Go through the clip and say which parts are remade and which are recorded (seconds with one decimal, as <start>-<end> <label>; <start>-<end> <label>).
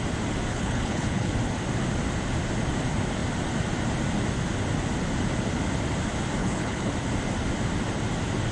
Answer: 0.0-0.5 recorded; 0.5-1.3 remade; 1.3-6.4 recorded; 6.4-6.9 remade; 6.9-8.5 recorded